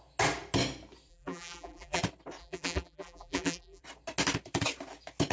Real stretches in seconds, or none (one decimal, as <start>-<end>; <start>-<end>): 0.0-1.1; 2.0-2.4; 3.8-5.3